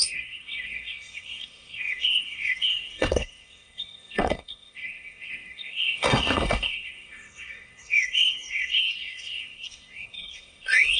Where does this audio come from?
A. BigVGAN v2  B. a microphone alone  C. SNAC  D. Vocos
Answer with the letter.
C